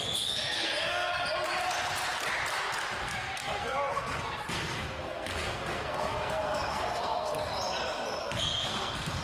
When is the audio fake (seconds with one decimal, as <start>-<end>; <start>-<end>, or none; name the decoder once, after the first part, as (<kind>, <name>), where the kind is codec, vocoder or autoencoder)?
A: 0.0-1.2 (codec, SNAC); 3.0-7.5; 8.2-9.2